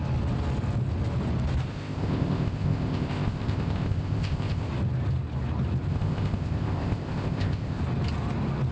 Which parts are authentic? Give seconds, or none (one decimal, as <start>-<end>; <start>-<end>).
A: 0.0-1.7; 4.7-5.9; 7.8-8.7